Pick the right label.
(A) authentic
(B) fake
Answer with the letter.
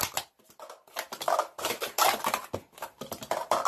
A